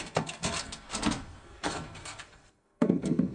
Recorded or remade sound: remade